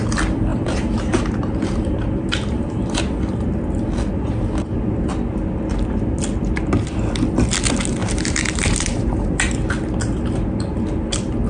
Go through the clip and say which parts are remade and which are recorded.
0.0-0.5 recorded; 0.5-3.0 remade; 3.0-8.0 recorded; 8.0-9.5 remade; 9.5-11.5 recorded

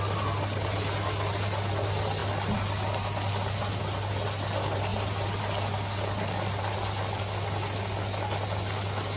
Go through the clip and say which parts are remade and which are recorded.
0.0-9.2 recorded

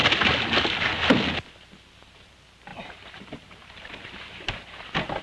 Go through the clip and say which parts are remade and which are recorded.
0.0-2.7 recorded; 2.7-5.2 remade

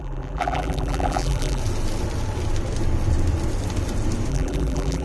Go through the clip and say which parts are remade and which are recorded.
0.0-1.6 remade; 1.6-4.3 recorded; 4.3-5.0 remade

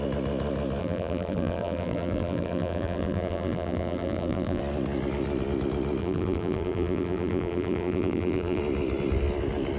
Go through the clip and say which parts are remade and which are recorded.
0.0-0.8 recorded; 0.8-4.6 remade; 4.6-6.0 recorded; 6.0-8.6 remade; 8.6-9.8 recorded

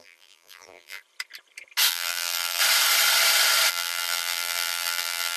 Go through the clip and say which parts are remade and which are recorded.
0.0-1.0 remade; 1.0-1.9 recorded; 1.9-2.6 remade; 2.6-3.7 recorded; 3.7-5.4 remade